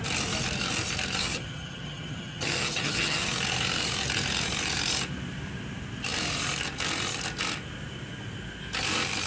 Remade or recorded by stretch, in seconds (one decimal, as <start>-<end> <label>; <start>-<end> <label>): 0.0-1.2 recorded; 1.2-3.3 remade; 3.3-9.3 recorded

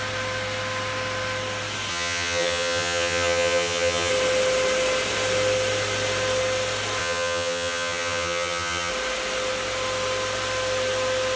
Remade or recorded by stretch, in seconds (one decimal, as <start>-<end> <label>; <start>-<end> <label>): 0.0-1.9 recorded; 1.9-4.1 remade; 4.1-7.0 recorded; 7.0-8.9 remade; 8.9-11.4 recorded

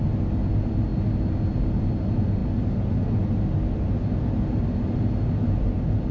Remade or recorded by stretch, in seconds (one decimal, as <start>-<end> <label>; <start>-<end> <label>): 0.0-6.1 recorded

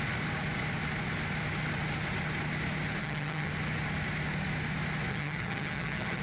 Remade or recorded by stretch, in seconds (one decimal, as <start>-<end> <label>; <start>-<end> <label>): 0.0-3.0 recorded; 3.0-3.5 remade; 3.5-5.1 recorded; 5.1-6.2 remade